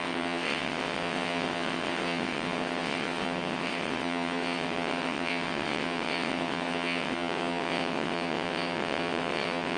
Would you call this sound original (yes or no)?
no